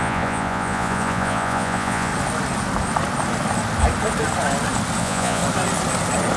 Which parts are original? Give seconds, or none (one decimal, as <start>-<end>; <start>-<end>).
2.1-5.0; 5.4-6.4